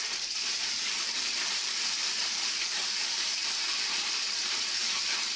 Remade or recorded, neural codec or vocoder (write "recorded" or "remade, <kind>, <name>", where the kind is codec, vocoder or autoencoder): remade, vocoder, BigVGAN v2